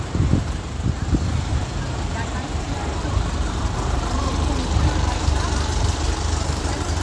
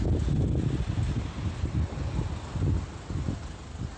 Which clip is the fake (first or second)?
first